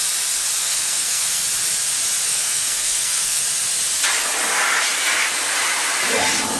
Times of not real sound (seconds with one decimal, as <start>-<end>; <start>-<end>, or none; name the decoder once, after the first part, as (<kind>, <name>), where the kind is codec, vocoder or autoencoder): 0.6-1.4 (codec, SNAC); 2.3-3.4